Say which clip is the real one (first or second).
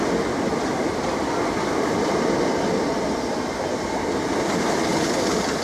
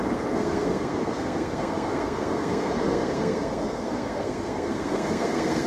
first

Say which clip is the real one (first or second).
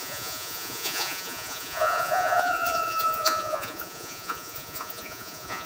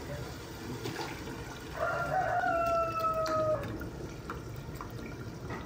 second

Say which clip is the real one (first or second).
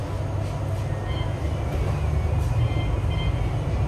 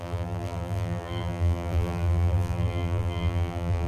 first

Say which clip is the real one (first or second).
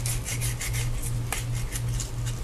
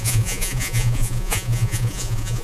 first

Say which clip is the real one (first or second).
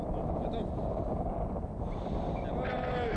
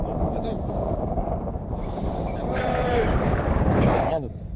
first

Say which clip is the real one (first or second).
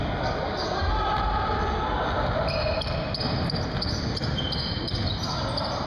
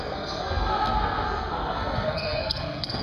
first